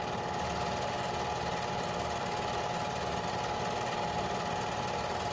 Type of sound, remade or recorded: recorded